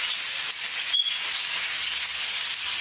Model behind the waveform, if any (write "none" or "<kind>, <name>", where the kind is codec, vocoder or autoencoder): none